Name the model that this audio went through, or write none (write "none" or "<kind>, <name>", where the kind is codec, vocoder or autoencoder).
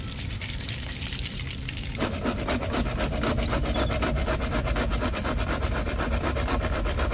vocoder, BigVGAN v2